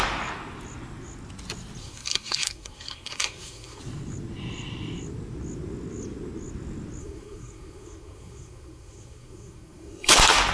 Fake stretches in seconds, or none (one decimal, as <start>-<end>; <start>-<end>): 1.8-3.8; 7.0-10.1